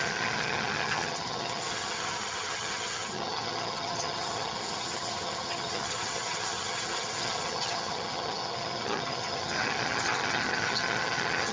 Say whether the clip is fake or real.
fake